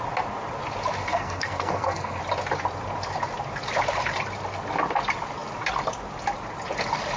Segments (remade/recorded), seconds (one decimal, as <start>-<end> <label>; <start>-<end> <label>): 0.0-1.0 recorded; 1.0-2.2 remade; 2.2-7.2 recorded